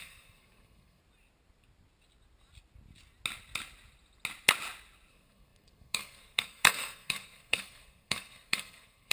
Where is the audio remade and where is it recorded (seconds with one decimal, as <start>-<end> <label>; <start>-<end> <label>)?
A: 0.0-1.0 remade; 1.0-5.1 recorded; 5.1-9.1 remade